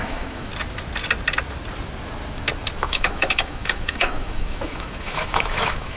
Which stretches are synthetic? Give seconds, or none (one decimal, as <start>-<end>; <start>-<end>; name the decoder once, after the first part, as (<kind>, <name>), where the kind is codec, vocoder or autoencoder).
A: 0.0-0.5 (autoencoder, DAC-VAE); 2.8-6.0

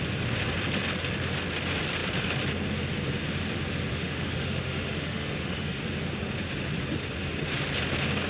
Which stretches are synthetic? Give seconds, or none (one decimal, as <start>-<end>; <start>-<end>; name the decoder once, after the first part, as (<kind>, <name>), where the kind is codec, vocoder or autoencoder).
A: 3.9-5.8 (autoencoder, DAC-VAE)

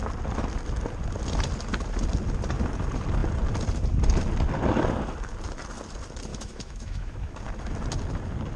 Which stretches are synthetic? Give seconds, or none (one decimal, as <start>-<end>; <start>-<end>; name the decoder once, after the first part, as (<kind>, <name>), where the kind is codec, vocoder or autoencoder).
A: 6.3-7.4 (autoencoder, DAC-VAE)

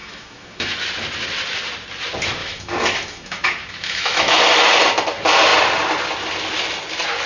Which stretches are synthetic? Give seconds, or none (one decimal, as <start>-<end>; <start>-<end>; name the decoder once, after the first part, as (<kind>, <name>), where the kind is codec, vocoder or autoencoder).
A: 0.0-0.7 (autoencoder, DAC-VAE); 2.4-4.4

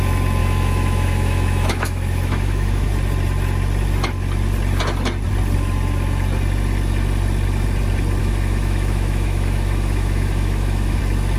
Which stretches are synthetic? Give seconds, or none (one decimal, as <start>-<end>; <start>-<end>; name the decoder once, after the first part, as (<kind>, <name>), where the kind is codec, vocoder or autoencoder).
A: 0.4-2.9 (autoencoder, DAC-VAE); 8.2-11.0

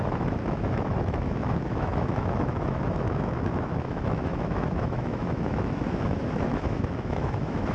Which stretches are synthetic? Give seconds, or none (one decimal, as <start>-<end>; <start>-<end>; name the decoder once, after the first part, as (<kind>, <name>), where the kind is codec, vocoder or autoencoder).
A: 0.0-7.7 (autoencoder, DAC-VAE)

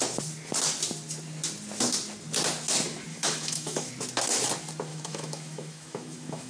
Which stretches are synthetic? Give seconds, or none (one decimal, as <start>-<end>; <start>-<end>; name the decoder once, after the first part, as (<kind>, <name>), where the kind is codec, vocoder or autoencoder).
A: 3.1-3.9 (autoencoder, DAC-VAE); 4.9-6.5